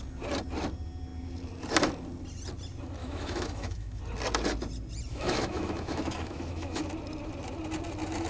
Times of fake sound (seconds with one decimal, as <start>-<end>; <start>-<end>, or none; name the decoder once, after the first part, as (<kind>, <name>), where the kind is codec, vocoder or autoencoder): 3.0-4.0 (autoencoder, DAC-VAE); 5.1-6.8